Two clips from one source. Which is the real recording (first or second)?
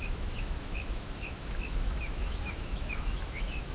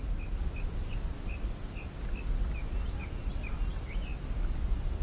second